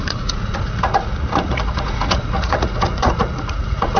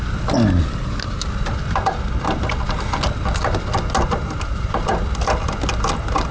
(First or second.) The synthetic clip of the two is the first